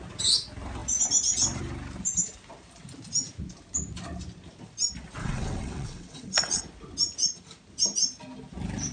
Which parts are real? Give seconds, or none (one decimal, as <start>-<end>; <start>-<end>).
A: 0.0-5.2; 6.6-8.9